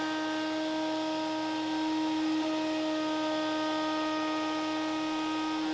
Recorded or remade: recorded